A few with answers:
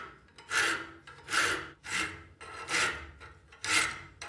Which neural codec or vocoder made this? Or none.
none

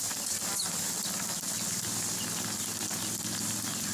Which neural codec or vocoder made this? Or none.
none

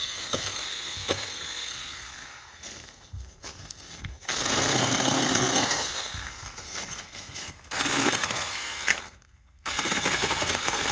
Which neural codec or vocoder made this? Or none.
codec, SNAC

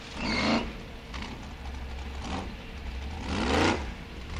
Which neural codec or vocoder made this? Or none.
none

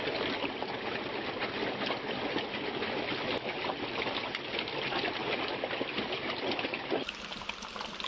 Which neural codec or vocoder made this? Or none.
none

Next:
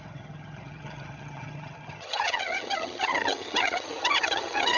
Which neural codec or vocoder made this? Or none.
vocoder, HiFi-GAN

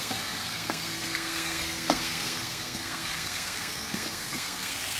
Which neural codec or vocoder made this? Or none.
codec, SNAC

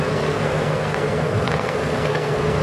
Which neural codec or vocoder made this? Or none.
codec, SNAC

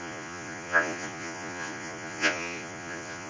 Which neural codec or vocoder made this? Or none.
vocoder, Vocos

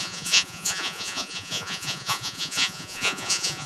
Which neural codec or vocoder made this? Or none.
vocoder, Vocos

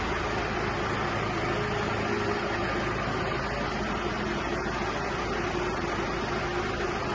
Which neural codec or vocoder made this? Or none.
none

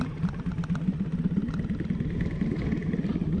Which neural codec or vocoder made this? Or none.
none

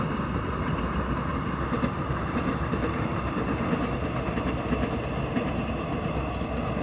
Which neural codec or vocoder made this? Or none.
none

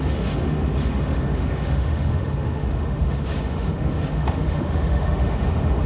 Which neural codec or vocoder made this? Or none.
autoencoder, DAC-VAE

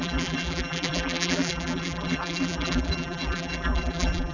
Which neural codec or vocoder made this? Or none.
vocoder, BigVGAN v2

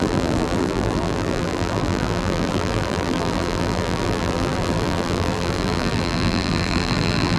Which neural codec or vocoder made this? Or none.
vocoder, BigVGAN v2